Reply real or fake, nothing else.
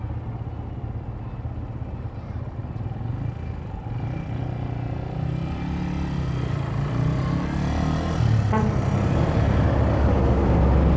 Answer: real